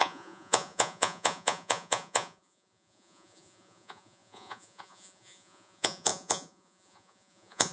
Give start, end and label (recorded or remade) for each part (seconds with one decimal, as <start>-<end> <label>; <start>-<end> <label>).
0.0-7.7 remade